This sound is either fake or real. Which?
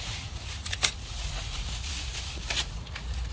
fake